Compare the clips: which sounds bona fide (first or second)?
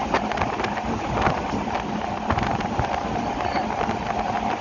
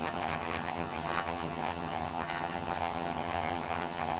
first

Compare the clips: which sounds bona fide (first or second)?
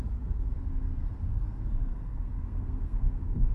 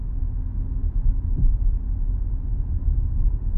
second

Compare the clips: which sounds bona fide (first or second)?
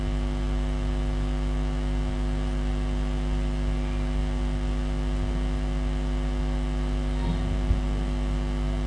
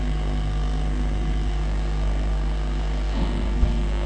first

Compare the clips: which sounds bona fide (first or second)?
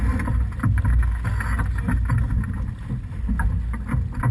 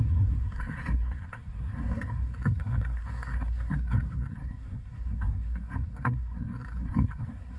first